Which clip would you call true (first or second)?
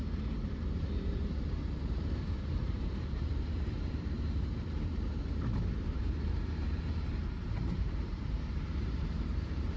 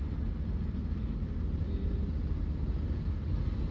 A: second